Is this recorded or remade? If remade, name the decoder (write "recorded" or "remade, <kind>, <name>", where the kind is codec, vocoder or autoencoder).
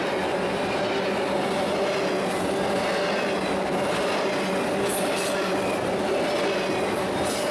recorded